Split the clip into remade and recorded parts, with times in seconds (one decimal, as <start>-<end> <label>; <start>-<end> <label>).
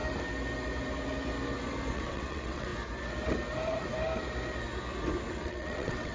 0.0-1.9 recorded; 1.9-2.7 remade; 2.7-5.3 recorded; 5.3-6.1 remade